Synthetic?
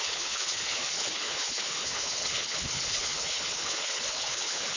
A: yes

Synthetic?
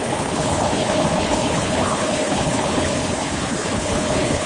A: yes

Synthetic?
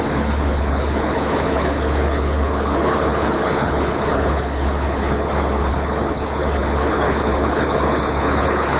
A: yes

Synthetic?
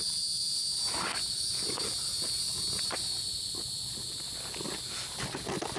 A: no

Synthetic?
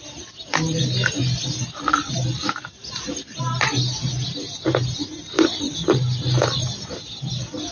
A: no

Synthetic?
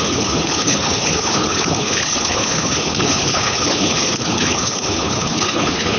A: yes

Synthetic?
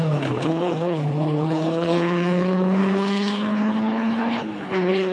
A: yes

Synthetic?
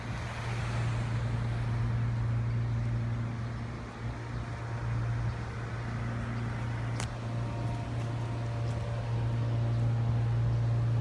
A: no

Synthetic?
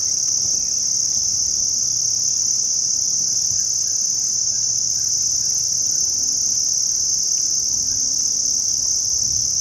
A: no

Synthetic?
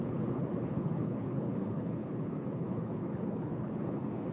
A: yes